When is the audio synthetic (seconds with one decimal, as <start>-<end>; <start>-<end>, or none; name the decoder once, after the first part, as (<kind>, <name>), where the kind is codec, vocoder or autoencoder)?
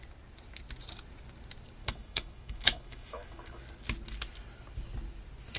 1.8-3.6 (autoencoder, DAC-VAE)